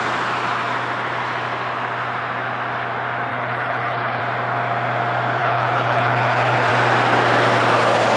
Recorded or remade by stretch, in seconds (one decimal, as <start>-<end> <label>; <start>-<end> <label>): 0.0-3.3 recorded; 3.3-4.2 remade; 4.2-5.4 recorded; 5.4-6.7 remade; 6.7-8.2 recorded